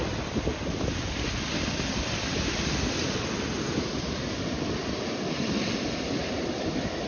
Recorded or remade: remade